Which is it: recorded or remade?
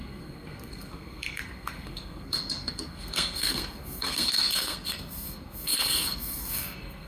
remade